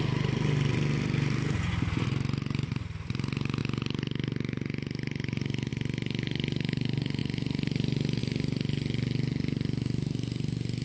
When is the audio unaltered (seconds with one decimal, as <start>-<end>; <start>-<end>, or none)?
0.0-10.8